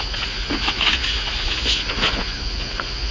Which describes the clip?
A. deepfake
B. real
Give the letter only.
A